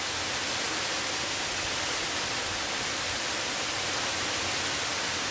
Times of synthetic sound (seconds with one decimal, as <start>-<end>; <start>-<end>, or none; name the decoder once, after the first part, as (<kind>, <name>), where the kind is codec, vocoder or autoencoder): none